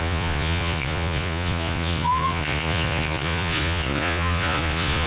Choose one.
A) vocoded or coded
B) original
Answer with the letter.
A